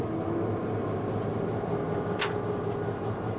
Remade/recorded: recorded